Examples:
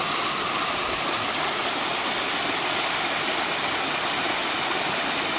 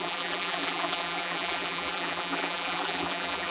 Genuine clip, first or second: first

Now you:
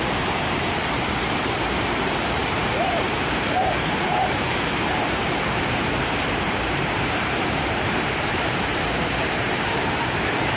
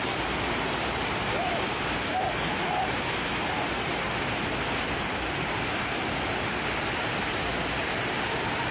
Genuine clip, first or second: second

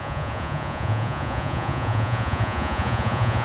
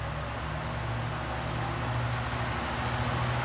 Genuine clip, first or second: second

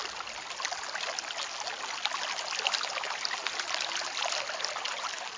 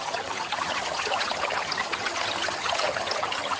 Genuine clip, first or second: first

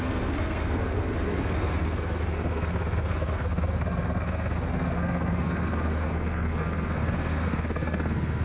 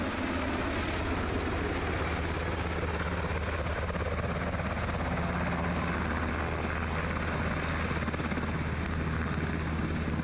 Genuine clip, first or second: second